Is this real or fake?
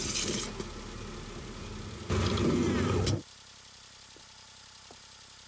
real